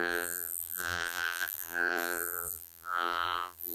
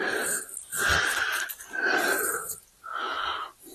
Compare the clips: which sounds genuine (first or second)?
second